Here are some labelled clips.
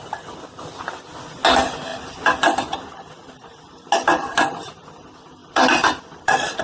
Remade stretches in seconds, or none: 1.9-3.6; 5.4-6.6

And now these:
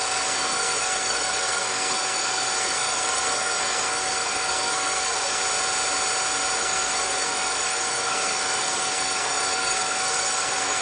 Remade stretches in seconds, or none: 0.0-5.4; 6.6-10.8

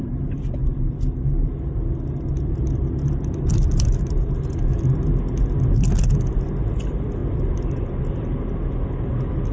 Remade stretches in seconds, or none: 7.2-7.8

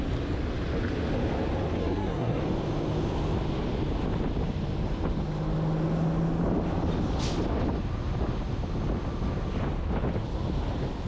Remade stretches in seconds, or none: 1.8-2.4

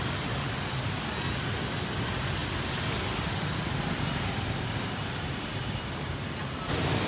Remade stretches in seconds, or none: none

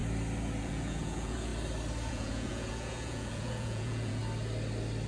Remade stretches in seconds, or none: 0.6-1.5; 2.1-4.2